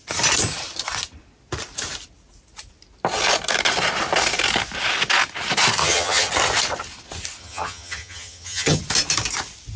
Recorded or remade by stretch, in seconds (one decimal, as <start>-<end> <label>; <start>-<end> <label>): 0.0-5.8 recorded; 5.8-6.3 remade; 6.3-7.4 recorded; 7.4-8.8 remade; 8.8-9.8 recorded